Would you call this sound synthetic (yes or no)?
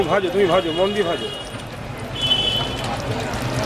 no